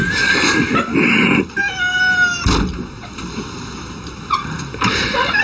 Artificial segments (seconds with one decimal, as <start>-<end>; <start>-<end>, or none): none